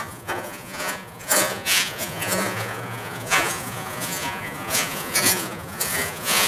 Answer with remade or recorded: remade